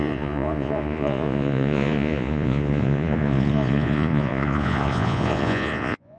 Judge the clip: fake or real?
fake